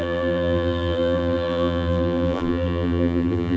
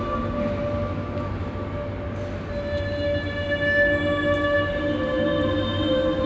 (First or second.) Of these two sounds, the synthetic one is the first